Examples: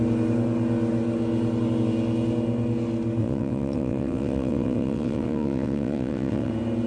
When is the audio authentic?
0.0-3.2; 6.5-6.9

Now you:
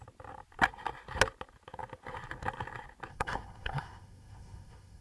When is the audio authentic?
0.0-3.1

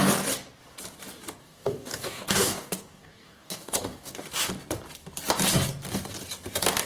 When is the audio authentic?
0.0-1.4; 4.3-6.9

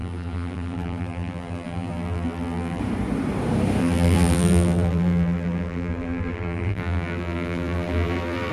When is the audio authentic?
2.8-3.8